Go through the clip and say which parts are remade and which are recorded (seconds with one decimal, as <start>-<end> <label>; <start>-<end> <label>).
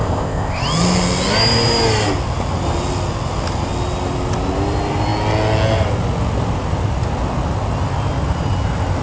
0.0-0.6 remade; 0.6-9.0 recorded